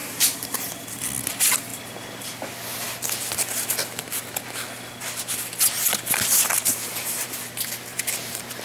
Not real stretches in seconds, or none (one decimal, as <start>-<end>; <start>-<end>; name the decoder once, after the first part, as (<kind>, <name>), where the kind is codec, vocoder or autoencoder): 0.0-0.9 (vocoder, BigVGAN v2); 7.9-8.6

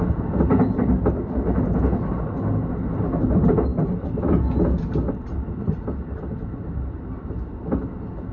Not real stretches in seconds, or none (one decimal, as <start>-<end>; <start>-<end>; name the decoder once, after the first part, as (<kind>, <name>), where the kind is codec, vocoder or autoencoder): none

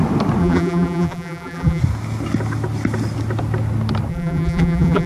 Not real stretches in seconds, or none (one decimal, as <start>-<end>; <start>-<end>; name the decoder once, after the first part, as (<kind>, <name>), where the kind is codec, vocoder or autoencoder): 0.4-1.8 (vocoder, BigVGAN v2); 4.1-5.1

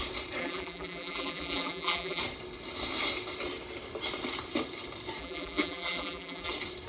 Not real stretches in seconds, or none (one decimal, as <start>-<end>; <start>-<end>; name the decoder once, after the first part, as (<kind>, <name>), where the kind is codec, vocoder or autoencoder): 0.4-2.2 (vocoder, BigVGAN v2); 5.2-6.5